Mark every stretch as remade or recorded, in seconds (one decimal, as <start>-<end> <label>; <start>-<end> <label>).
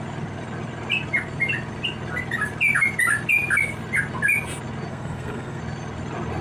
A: 0.0-4.9 recorded; 4.9-5.6 remade; 5.6-6.4 recorded